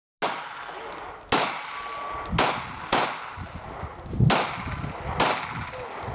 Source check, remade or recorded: recorded